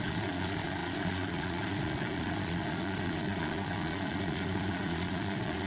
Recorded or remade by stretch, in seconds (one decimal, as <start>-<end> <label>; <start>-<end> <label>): 0.0-5.7 remade